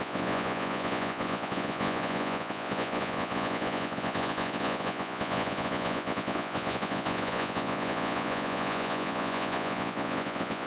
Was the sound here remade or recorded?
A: remade